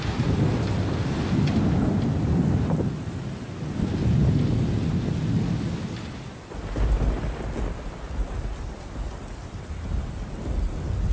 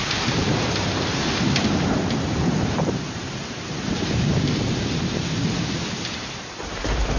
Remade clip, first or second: second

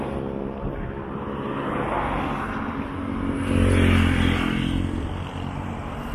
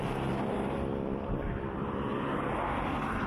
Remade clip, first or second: second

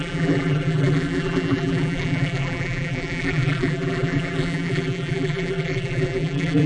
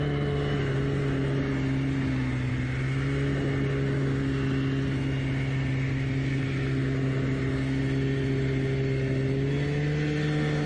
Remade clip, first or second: first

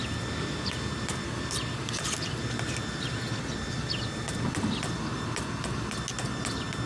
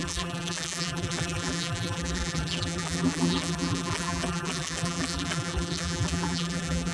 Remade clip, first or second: second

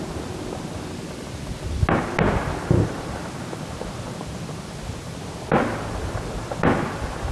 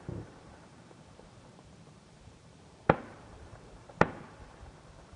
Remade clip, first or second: second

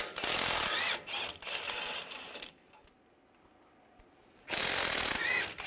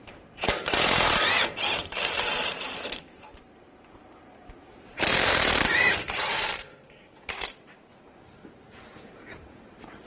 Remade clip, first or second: second